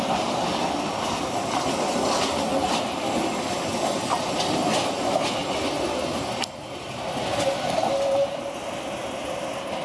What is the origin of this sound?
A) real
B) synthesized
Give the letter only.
A